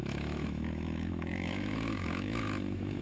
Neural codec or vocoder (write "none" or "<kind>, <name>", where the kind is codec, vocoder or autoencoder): autoencoder, DAC-VAE